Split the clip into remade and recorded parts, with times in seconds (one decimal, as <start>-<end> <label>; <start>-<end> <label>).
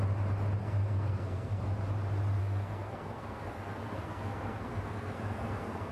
0.0-0.6 recorded; 0.6-1.6 remade; 1.6-2.4 recorded; 2.4-5.9 remade